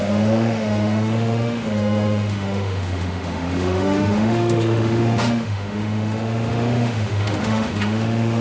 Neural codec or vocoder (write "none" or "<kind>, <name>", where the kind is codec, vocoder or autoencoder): autoencoder, DAC-VAE